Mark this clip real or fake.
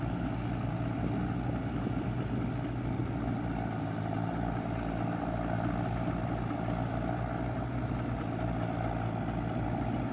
real